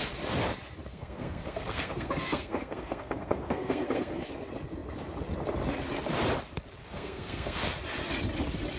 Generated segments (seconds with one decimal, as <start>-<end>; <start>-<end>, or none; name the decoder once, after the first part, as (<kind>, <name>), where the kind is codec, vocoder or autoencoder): 0.9-4.3 (codec, SNAC); 6.8-7.6